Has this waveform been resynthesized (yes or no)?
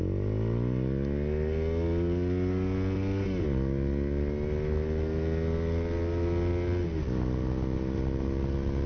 no